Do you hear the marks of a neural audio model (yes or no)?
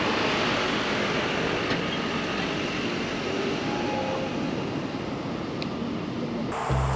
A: no